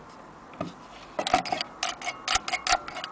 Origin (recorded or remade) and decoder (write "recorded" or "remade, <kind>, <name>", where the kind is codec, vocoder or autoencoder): recorded